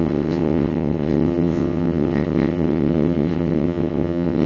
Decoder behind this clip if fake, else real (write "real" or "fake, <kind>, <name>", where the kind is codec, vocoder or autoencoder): fake, vocoder, WaveNeXt